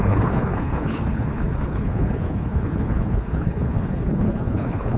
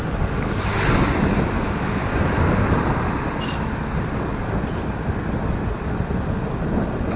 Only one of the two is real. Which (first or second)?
second